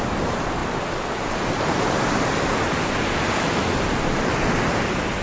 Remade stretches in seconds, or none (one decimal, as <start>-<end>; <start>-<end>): none